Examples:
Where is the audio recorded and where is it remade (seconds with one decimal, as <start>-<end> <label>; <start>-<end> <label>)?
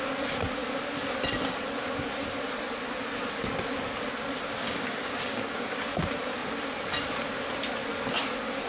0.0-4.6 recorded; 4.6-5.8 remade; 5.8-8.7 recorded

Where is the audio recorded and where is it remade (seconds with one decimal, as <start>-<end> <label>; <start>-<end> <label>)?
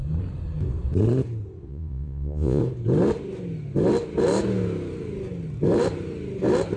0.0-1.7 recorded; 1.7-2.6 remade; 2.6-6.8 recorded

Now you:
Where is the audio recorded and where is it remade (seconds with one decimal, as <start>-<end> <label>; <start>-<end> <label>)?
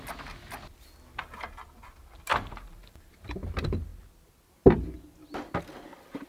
0.0-2.3 recorded; 2.3-3.3 remade; 3.3-6.3 recorded